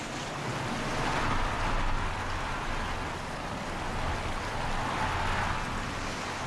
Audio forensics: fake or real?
real